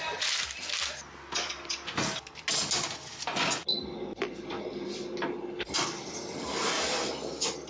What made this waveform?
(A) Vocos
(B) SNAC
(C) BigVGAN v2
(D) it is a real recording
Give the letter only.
D